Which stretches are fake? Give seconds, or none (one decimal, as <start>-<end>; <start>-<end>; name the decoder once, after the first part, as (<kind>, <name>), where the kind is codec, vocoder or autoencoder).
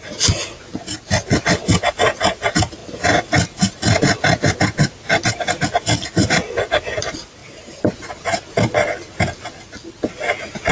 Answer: 7.4-7.9 (vocoder, BigVGAN v2)